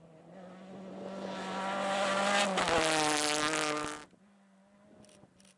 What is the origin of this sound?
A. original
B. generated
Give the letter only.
A